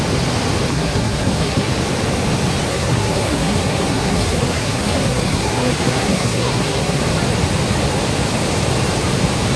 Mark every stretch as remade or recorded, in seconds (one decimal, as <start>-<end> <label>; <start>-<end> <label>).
0.0-0.7 recorded; 0.7-1.7 remade; 1.7-2.7 recorded; 2.7-7.0 remade; 7.0-9.6 recorded